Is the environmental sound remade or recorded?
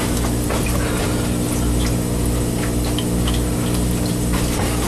recorded